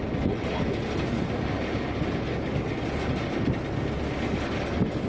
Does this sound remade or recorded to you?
recorded